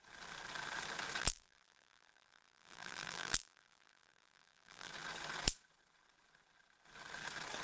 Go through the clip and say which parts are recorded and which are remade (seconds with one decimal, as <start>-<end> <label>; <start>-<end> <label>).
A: 0.0-1.2 recorded; 1.2-4.9 remade; 4.9-7.6 recorded